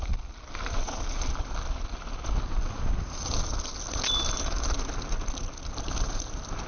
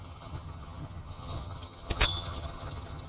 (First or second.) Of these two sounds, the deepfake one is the second